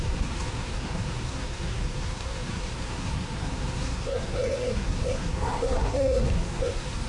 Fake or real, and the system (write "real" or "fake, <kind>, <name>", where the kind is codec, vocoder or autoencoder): fake, codec, SNAC